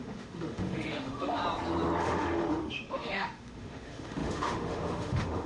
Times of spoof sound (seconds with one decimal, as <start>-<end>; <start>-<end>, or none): 0.0-1.4; 2.0-5.5